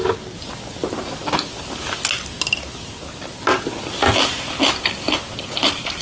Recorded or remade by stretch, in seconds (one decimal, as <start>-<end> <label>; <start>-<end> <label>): 0.0-6.0 recorded